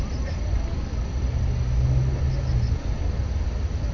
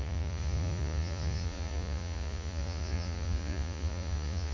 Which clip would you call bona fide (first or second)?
first